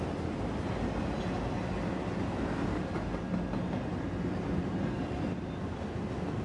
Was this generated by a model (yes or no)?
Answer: no